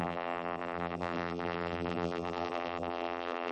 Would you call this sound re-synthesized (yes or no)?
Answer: yes